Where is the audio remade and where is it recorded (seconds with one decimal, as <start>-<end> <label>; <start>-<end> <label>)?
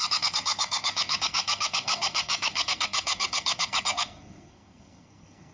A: 0.0-5.5 remade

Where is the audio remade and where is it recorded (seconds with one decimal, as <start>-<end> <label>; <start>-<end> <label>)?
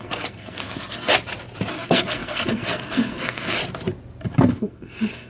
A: 0.0-1.1 remade; 1.1-1.7 recorded; 1.7-3.6 remade; 3.6-4.4 recorded; 4.4-5.3 remade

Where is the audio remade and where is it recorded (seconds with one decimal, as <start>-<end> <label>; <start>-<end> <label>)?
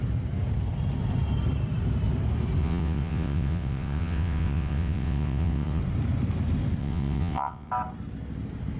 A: 0.0-2.6 recorded; 2.6-5.8 remade; 5.8-6.8 recorded; 6.8-7.7 remade; 7.7-8.8 recorded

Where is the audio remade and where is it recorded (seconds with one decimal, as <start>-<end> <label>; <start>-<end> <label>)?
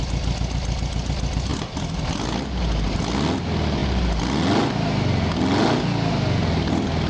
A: 0.0-7.1 recorded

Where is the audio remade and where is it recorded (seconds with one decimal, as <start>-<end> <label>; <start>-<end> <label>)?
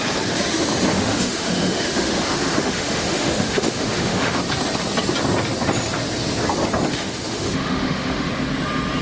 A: 0.0-0.9 recorded; 0.9-4.4 remade; 4.4-6.9 recorded; 6.9-8.3 remade; 8.3-9.0 recorded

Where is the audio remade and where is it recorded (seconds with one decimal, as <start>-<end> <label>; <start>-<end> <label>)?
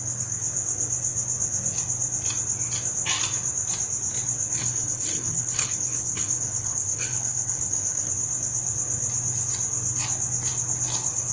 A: 0.0-4.6 recorded; 4.6-8.1 remade; 8.1-11.3 recorded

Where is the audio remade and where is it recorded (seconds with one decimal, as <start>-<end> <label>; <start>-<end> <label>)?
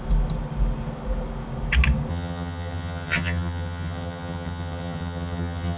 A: 0.0-2.1 recorded; 2.1-5.8 remade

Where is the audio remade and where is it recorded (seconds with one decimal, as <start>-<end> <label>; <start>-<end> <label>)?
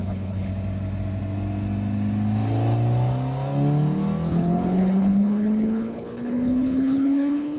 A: 0.0-0.5 remade; 0.5-4.3 recorded; 4.3-7.6 remade